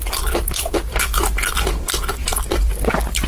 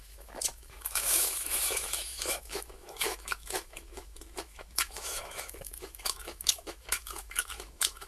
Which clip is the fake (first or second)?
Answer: second